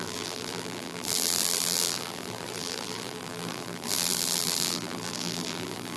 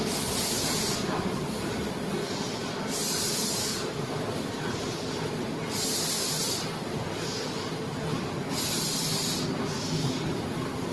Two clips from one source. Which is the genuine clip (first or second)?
second